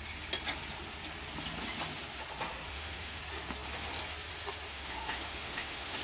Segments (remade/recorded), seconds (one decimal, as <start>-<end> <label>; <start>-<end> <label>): 0.0-2.7 recorded; 2.7-3.2 remade; 3.2-4.7 recorded; 4.7-6.0 remade